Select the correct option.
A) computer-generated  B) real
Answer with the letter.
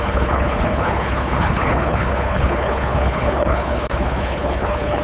A